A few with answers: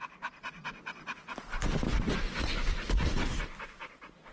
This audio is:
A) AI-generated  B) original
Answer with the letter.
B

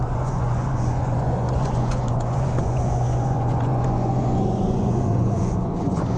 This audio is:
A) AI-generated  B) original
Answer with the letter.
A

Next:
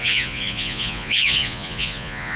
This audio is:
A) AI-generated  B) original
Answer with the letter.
A